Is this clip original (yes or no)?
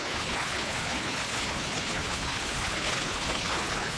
no